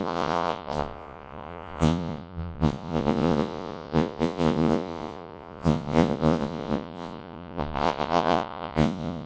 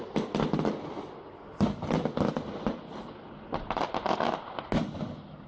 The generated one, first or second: first